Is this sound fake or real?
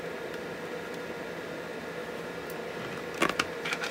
real